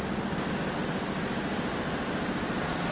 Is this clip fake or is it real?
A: real